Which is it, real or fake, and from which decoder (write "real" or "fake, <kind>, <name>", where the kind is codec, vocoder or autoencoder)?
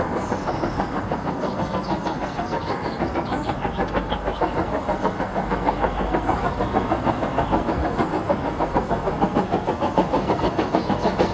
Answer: fake, codec, SNAC